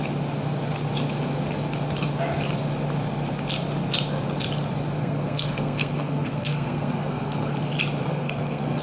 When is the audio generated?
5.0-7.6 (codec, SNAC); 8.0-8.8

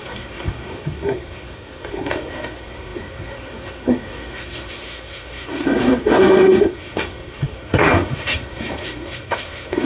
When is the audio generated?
0.0-9.9 (codec, SNAC)

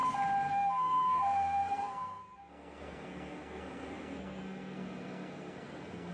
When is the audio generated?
0.5-6.1 (codec, SNAC)

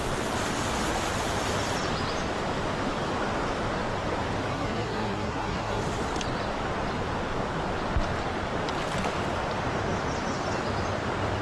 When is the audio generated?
4.5-5.8 (codec, SNAC)

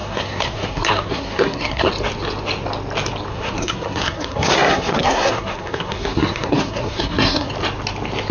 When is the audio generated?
0.0-1.9 (codec, SNAC); 3.3-7.5

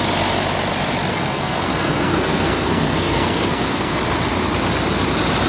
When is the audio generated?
1.1-4.0 (codec, SNAC)

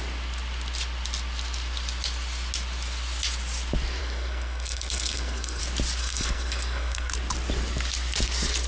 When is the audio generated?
4.0-5.6 (codec, SNAC); 6.0-7.1